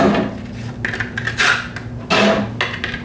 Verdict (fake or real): real